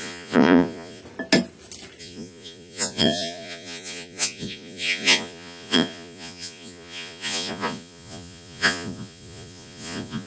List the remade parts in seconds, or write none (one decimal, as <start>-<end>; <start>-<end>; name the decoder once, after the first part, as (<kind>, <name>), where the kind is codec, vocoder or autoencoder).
0.0-1.0 (vocoder, Vocos); 2.0-10.3